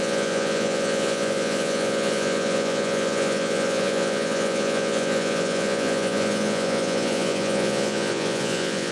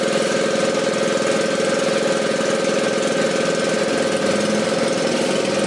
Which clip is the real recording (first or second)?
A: second